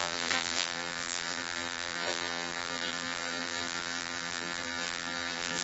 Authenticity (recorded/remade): remade